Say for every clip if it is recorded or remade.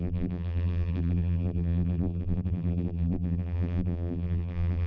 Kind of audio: remade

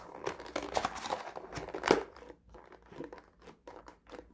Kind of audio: recorded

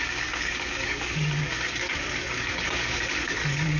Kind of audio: remade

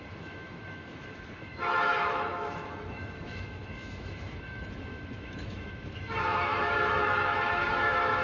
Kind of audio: remade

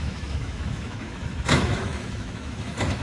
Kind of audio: remade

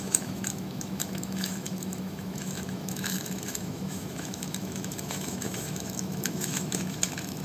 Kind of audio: remade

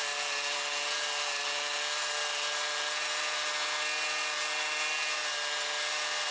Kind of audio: recorded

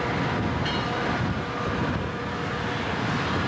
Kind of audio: recorded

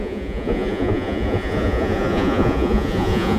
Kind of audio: remade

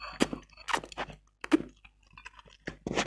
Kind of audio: recorded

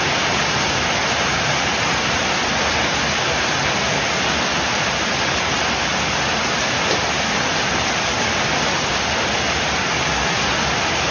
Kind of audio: recorded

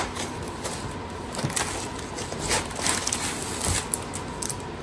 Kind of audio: recorded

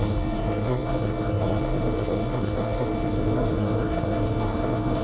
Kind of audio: remade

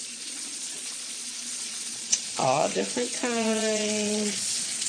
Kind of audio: remade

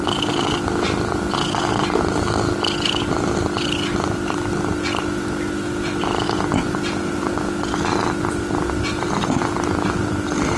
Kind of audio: recorded